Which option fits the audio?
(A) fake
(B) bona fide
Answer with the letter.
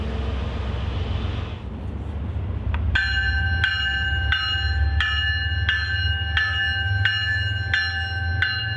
B